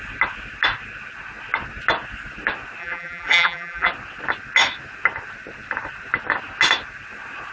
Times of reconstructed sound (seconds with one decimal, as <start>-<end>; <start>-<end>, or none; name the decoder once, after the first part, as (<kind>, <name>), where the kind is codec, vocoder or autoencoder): 2.8-3.9 (vocoder, BigVGAN v2)